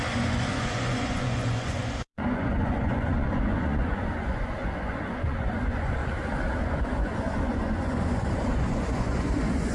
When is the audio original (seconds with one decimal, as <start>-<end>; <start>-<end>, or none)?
6.0-6.6